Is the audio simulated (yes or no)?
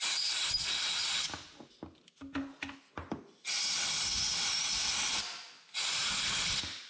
no